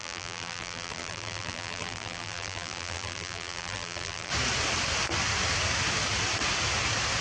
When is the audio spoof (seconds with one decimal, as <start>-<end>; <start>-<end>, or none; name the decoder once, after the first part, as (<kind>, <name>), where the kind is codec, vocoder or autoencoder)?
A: 0.0-4.3 (vocoder, BigVGAN v2)